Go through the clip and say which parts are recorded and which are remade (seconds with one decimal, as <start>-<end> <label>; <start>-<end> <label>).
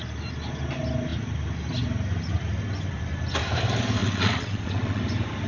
0.0-4.0 recorded; 4.0-5.0 remade; 5.0-5.5 recorded